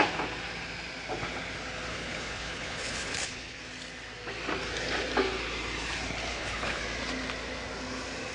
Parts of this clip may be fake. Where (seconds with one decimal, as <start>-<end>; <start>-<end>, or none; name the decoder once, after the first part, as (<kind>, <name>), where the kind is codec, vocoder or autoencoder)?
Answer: 1.9-3.6 (codec, HILCodec); 6.3-6.8